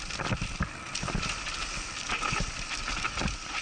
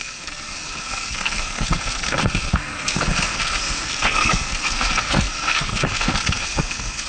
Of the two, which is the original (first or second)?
first